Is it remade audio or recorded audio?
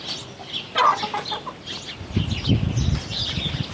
recorded